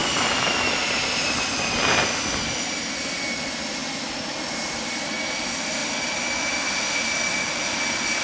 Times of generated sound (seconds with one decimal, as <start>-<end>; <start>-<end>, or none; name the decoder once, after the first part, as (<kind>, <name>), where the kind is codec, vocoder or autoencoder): none